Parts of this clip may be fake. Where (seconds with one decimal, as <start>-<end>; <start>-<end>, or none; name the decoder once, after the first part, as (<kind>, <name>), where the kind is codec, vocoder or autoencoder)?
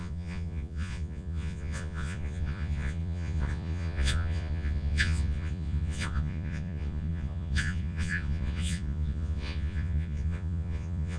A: 0.0-11.2 (vocoder, Vocos)